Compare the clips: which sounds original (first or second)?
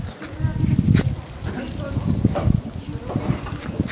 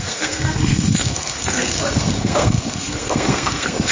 first